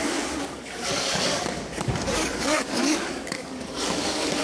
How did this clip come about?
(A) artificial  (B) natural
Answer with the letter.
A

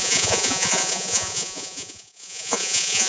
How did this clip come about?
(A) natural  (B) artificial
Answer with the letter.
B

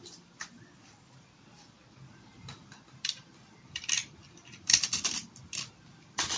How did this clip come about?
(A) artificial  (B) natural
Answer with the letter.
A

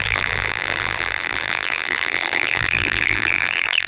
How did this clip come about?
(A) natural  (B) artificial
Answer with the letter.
B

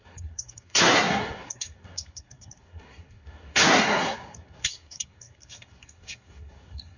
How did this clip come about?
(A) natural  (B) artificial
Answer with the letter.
B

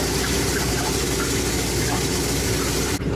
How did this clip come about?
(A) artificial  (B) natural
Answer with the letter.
B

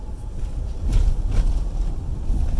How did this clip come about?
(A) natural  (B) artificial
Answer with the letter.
A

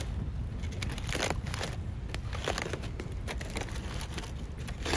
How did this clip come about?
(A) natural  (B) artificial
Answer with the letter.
A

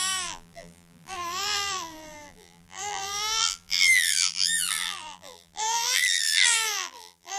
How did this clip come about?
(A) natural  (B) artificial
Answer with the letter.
B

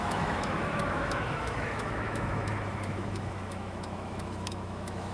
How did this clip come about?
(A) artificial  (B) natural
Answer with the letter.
A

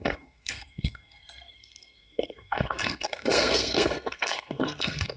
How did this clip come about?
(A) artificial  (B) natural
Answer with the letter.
A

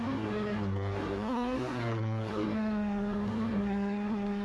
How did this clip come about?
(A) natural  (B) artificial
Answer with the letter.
B